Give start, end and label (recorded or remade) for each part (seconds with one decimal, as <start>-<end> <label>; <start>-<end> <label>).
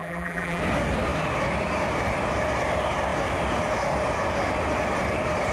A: 0.0-0.6 remade; 0.6-5.5 recorded